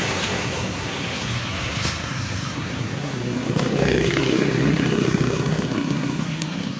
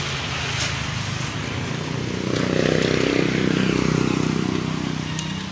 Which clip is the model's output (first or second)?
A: first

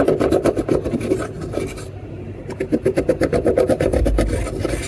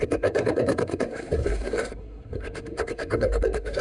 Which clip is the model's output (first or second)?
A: second